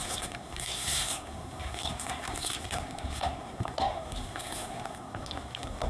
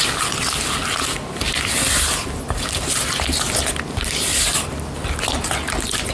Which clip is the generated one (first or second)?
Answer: first